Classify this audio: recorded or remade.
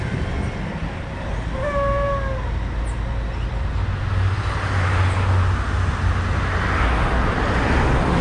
recorded